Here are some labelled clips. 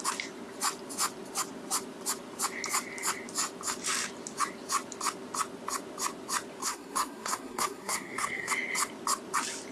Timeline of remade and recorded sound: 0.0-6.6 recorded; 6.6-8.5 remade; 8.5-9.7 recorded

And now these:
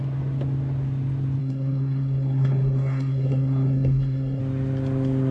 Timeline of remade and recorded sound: 0.0-1.4 recorded; 1.4-4.4 remade; 4.4-5.3 recorded

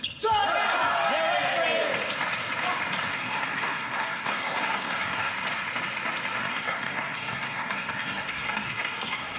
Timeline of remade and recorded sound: 0.0-3.1 recorded; 3.1-5.3 remade; 5.3-6.4 recorded; 6.4-9.4 remade

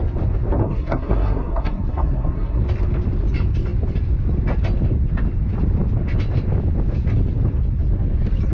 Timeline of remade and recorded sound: 0.0-0.6 recorded; 0.6-2.6 remade; 2.6-8.5 recorded

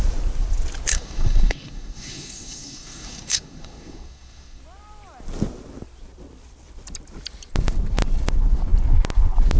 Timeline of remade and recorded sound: 0.0-0.9 recorded; 0.9-4.6 remade; 4.6-9.6 recorded

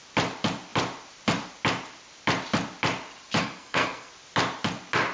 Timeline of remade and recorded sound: 0.0-3.4 recorded; 3.4-4.1 remade; 4.1-5.1 recorded

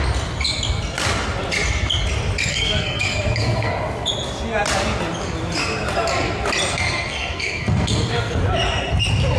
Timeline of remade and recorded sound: 0.0-2.5 recorded; 2.5-3.7 remade; 3.7-6.7 recorded; 6.7-8.4 remade; 8.4-9.4 recorded

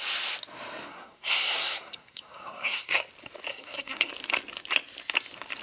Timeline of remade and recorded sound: 0.0-0.9 recorded; 0.9-3.1 remade; 3.1-3.5 recorded; 3.5-4.1 remade; 4.1-5.6 recorded